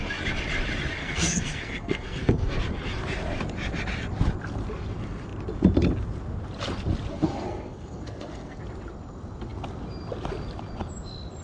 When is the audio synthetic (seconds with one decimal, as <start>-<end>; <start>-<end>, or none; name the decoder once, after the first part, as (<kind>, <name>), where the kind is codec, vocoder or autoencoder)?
1.0-2.6 (codec, SNAC); 7.1-8.6